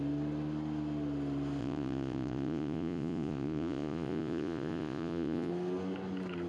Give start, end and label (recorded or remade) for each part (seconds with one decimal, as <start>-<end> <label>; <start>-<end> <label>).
0.0-1.6 recorded; 1.6-5.5 remade; 5.5-6.5 recorded